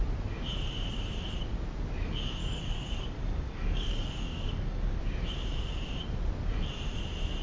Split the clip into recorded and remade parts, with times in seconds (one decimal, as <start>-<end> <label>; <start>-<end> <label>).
0.0-2.4 recorded; 2.4-5.0 remade; 5.0-7.4 recorded

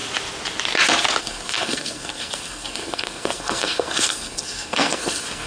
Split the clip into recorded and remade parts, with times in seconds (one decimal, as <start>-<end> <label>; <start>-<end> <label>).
0.0-1.2 recorded; 1.2-5.5 remade

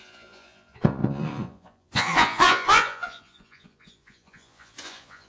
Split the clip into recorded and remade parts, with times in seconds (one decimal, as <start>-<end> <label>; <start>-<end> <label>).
0.0-5.3 remade

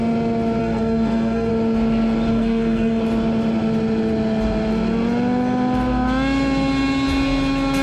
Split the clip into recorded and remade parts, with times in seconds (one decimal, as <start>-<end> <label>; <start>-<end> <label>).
0.0-0.6 recorded; 0.6-1.5 remade; 1.5-2.3 recorded; 2.3-3.0 remade; 3.0-7.8 recorded

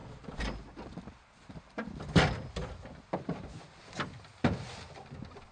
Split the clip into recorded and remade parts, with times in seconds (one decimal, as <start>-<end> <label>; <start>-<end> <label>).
0.0-5.5 recorded

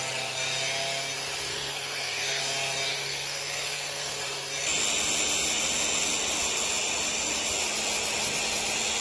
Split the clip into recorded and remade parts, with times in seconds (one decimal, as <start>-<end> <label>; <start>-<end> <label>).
0.0-1.5 recorded; 1.5-2.4 remade; 2.4-2.9 recorded; 2.9-4.2 remade; 4.2-9.0 recorded